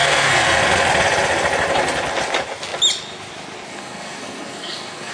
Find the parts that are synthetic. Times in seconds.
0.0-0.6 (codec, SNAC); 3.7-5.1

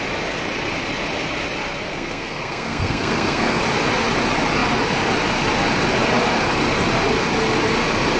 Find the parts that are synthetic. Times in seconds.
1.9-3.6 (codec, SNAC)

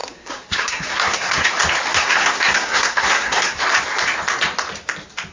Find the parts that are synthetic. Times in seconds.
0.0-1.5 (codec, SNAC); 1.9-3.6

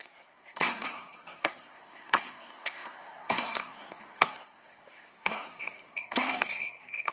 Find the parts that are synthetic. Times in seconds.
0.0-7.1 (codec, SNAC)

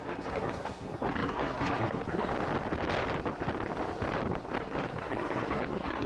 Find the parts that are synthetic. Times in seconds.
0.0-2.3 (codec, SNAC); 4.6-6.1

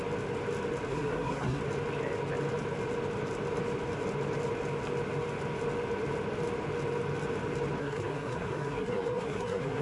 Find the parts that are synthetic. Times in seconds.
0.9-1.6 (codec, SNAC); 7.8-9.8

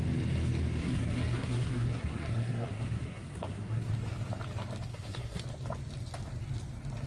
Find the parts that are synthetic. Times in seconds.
0.8-3.9 (codec, SNAC); 4.9-5.4

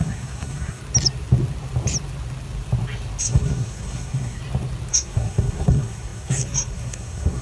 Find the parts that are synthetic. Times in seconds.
0.0-0.8 (codec, SNAC); 3.2-4.4; 4.9-7.4